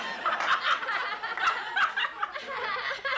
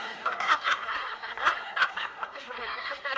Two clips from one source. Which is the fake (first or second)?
second